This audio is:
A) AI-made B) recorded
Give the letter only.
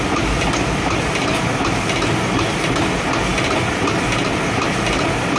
B